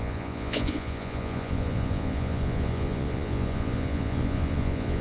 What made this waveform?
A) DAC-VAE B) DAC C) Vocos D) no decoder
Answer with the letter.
C